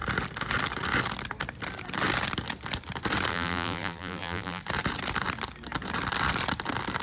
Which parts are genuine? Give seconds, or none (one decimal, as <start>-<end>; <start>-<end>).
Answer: 0.0-3.3; 4.6-7.0